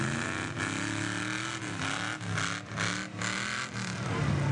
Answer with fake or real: real